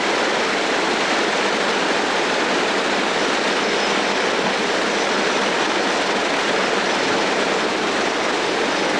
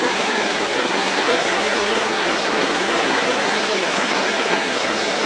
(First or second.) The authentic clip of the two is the first